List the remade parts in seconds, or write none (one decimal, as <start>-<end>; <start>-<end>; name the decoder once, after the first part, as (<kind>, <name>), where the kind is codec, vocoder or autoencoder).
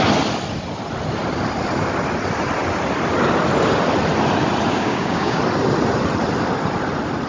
4.7-5.4 (codec, DAC)